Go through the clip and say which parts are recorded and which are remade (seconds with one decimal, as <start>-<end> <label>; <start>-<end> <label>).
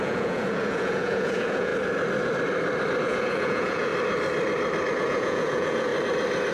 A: 0.0-1.7 remade; 1.7-3.0 recorded; 3.0-3.9 remade; 3.9-4.9 recorded; 4.9-5.9 remade; 5.9-6.5 recorded